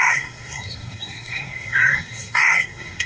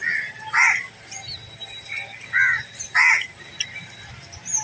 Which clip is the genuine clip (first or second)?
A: second